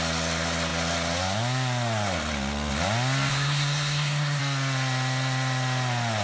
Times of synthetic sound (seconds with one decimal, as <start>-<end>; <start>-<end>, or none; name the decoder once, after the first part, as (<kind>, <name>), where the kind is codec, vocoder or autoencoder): 3.3-4.4 (codec, SNAC)